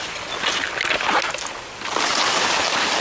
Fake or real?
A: real